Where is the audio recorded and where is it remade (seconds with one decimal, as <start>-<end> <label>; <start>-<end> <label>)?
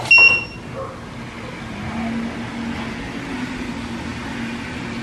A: 0.0-5.0 recorded